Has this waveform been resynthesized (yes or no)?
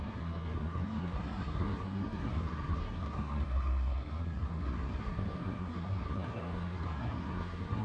yes